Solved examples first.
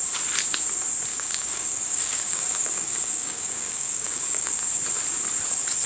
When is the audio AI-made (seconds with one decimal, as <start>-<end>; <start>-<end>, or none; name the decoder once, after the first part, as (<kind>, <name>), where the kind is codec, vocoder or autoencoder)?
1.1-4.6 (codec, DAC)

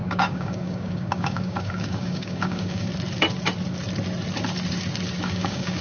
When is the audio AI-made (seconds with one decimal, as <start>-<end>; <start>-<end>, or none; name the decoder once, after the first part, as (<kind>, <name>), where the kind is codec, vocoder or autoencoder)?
0.0-2.9 (codec, DAC); 5.2-5.8

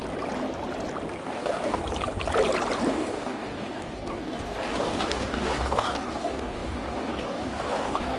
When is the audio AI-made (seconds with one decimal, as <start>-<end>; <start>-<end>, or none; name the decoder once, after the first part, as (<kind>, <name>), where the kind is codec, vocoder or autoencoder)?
1.2-1.8 (codec, DAC); 2.9-8.2

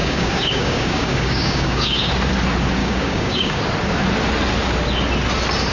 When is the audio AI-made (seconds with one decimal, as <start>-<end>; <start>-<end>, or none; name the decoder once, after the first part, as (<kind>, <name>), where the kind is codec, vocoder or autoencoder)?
0.0-2.1 (codec, DAC); 2.8-3.6

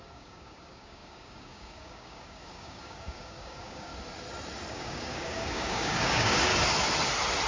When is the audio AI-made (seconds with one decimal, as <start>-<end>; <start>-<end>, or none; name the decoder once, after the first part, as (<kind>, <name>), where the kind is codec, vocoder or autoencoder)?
0.0-3.9 (codec, DAC); 4.7-6.5